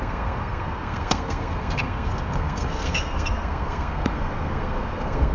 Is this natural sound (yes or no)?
no